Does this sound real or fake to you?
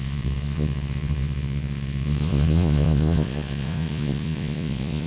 fake